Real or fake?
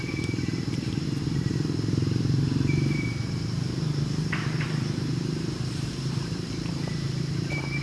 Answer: fake